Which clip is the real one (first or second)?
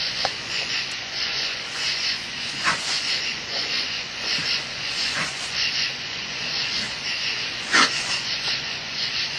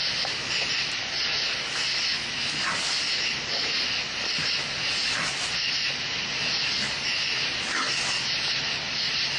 second